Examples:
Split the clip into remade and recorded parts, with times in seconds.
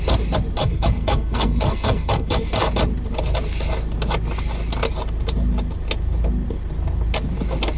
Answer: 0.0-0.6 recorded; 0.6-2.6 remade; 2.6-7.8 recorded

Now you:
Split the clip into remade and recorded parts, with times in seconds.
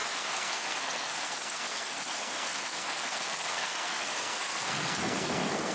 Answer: 0.0-5.7 remade